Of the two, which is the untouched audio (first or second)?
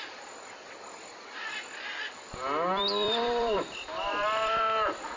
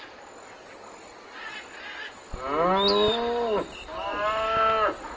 second